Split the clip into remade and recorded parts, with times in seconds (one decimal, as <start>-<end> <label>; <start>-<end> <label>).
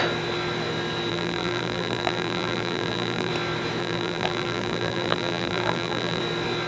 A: 0.0-1.1 recorded; 1.1-3.3 remade; 3.3-3.8 recorded; 3.8-6.2 remade; 6.2-6.7 recorded